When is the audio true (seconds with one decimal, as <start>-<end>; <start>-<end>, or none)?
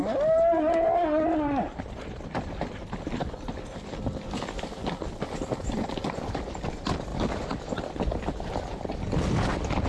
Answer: 0.0-9.9